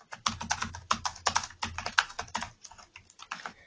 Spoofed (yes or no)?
no